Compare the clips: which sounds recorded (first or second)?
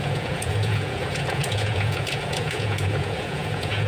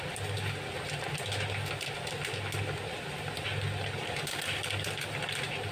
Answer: second